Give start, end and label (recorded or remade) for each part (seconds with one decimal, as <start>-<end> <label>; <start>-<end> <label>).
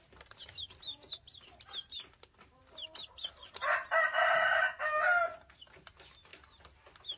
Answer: 0.0-7.2 recorded